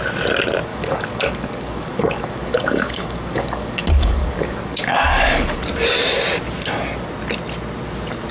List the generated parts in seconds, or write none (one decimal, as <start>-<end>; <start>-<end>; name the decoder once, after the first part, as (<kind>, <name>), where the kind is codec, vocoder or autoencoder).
0.7-5.6 (codec, DAC)